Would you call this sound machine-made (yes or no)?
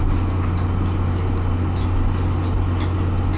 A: no